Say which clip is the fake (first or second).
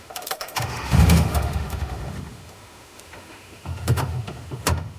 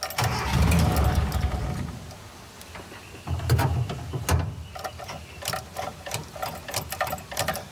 first